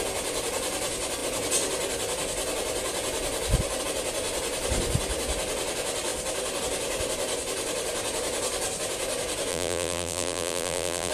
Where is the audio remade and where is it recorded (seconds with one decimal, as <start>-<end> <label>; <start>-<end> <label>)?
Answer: 0.0-9.5 recorded; 9.5-11.1 remade